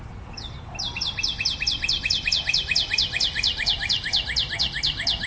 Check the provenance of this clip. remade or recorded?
recorded